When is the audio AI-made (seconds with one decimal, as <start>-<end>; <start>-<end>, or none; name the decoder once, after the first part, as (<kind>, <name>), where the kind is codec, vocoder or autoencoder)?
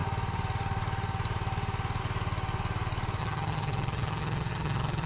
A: 3.2-5.1 (vocoder, HiFi-GAN)